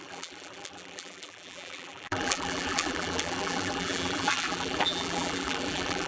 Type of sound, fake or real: fake